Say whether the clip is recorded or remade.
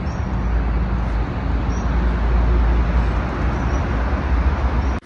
recorded